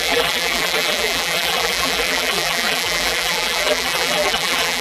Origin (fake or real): fake